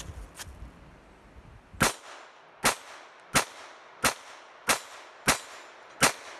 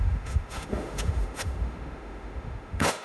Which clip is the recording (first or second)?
first